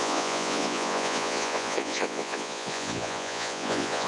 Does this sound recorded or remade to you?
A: remade